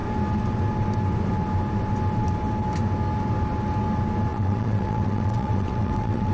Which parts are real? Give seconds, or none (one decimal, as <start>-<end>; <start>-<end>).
0.0-4.3